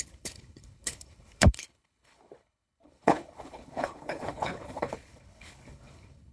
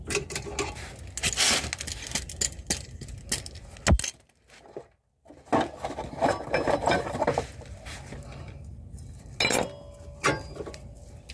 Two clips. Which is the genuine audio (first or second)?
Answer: second